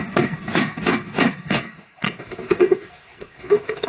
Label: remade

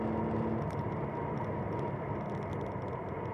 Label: recorded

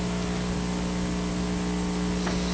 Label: recorded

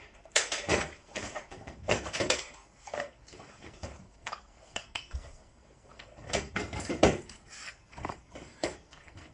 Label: remade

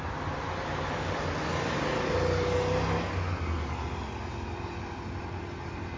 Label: recorded